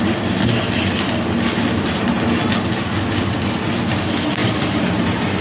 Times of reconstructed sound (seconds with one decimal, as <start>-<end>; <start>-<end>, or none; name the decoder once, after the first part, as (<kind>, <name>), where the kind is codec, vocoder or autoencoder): 4.4-5.4 (vocoder, BigVGAN v2)